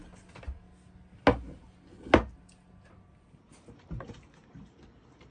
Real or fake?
real